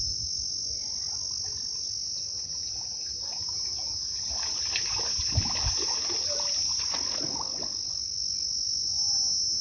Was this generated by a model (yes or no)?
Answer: no